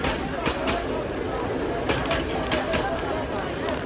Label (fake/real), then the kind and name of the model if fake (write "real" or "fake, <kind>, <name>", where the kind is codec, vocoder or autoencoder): real